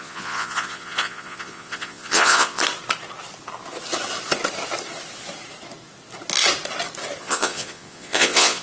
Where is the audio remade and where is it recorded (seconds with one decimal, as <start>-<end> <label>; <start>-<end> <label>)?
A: 0.0-2.6 remade; 2.6-7.2 recorded; 7.2-8.6 remade